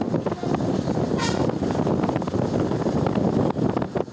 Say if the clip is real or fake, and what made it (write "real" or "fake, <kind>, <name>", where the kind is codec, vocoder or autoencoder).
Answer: real